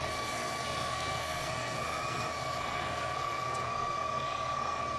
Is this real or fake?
fake